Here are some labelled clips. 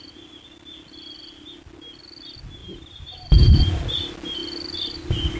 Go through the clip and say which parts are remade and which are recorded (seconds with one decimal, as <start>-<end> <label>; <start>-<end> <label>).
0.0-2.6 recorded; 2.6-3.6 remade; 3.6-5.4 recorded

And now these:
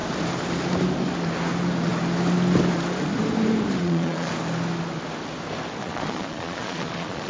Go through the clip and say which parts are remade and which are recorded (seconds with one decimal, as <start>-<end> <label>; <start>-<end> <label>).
0.0-3.8 recorded; 3.8-4.3 remade; 4.3-5.8 recorded; 5.8-7.3 remade

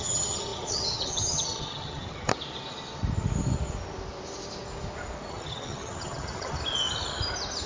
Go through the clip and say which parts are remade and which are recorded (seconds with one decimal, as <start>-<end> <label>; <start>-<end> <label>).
0.0-2.3 remade; 2.3-5.3 recorded; 5.3-6.6 remade; 6.6-7.7 recorded